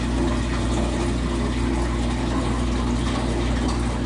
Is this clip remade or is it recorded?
recorded